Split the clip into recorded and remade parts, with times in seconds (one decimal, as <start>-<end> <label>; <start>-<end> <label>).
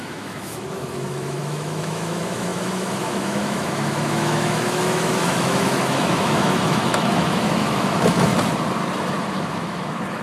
0.0-8.3 remade; 8.3-9.0 recorded; 9.0-10.2 remade